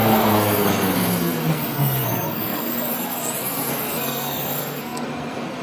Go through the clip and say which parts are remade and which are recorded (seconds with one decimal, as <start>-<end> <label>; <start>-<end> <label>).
0.0-5.6 remade